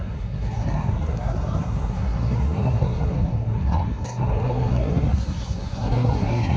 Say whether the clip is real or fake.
fake